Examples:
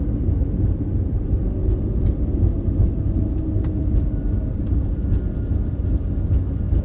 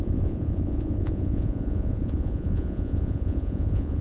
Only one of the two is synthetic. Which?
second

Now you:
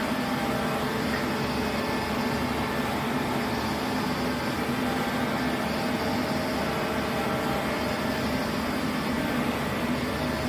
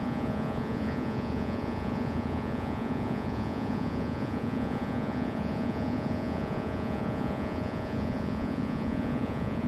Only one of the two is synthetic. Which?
second